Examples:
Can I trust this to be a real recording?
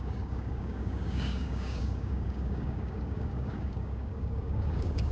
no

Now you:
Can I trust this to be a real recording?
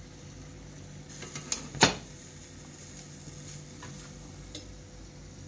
yes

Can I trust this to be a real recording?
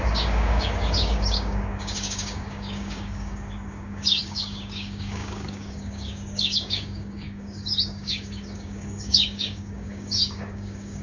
no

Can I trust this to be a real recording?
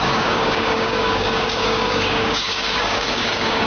no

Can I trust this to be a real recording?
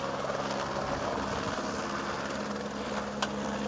yes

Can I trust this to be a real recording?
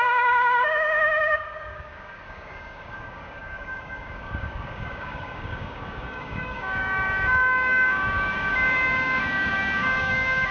no